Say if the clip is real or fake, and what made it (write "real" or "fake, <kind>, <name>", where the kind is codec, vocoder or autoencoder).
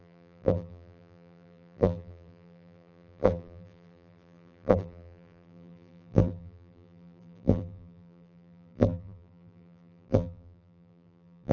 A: fake, vocoder, BigVGAN v2